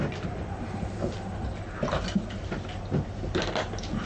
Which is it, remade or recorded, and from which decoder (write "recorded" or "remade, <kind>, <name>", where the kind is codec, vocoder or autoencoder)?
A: recorded